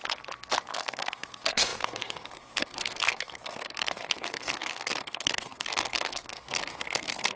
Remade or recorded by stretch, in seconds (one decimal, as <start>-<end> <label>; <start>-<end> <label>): 0.0-0.6 recorded; 0.6-7.4 remade